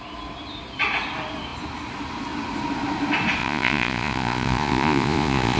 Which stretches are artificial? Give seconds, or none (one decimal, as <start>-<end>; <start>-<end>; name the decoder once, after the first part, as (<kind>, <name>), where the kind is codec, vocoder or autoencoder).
3.4-5.6 (vocoder, Vocos)